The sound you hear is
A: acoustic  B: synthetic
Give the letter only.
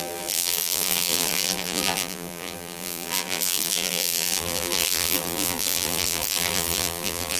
B